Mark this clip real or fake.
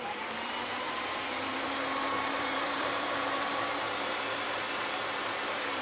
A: fake